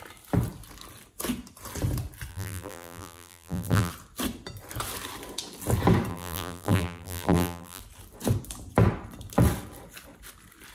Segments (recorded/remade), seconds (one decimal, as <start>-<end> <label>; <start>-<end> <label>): 0.0-2.3 recorded; 2.3-3.9 remade; 3.9-6.1 recorded; 6.1-7.8 remade; 7.8-10.7 recorded

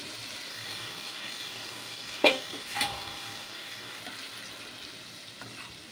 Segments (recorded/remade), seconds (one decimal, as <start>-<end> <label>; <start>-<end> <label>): 0.0-0.5 recorded; 0.5-4.0 remade; 4.0-5.9 recorded

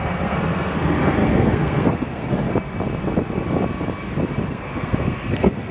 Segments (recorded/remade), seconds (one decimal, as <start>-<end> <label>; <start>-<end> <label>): 0.0-2.5 remade; 2.5-4.5 recorded; 4.5-5.7 remade

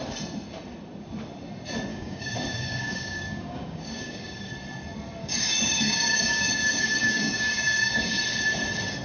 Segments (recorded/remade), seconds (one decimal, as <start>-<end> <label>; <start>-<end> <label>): 0.0-1.9 recorded; 1.9-4.5 remade; 4.5-5.2 recorded; 5.2-8.2 remade; 8.2-9.0 recorded

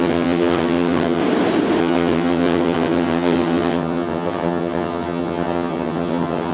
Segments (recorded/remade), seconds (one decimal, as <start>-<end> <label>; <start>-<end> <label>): 0.0-1.2 remade; 1.2-1.8 recorded; 1.8-6.5 remade

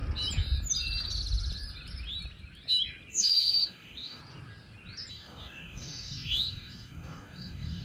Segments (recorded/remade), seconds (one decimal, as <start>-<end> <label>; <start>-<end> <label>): 0.0-3.1 recorded; 3.1-4.2 remade; 4.2-5.1 recorded; 5.1-7.8 remade

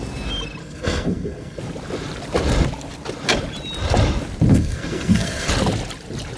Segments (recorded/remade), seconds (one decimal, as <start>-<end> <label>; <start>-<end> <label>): 0.0-0.6 recorded; 0.6-1.6 remade; 1.6-4.5 recorded; 4.5-5.5 remade; 5.5-6.4 recorded